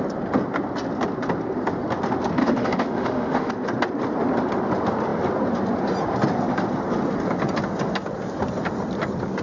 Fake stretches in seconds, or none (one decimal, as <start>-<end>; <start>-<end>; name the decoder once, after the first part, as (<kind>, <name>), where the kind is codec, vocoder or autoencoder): 2.4-3.5 (autoencoder, DAC-VAE)